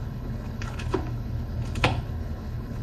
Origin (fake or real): fake